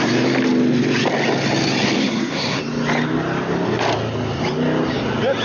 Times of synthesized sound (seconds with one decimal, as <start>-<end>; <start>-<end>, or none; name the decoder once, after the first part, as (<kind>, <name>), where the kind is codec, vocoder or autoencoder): 2.0-2.6 (codec, SNAC)